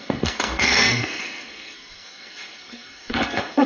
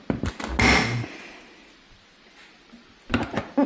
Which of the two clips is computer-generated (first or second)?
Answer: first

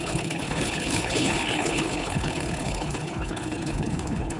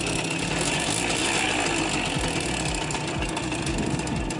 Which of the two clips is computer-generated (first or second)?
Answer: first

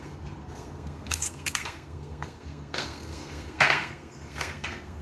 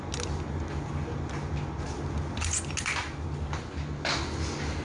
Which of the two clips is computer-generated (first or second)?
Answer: first